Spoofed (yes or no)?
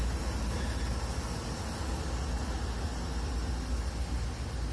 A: no